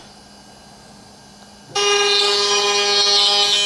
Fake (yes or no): no